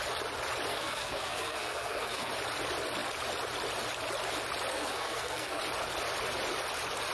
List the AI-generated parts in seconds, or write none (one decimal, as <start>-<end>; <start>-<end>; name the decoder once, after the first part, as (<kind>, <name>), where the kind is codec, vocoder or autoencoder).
0.7-2.3 (codec, SNAC); 4.7-5.6